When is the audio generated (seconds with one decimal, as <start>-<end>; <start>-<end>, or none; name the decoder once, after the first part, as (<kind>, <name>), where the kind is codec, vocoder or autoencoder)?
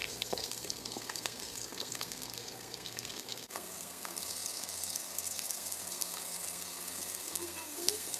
0.0-8.2 (codec, SNAC)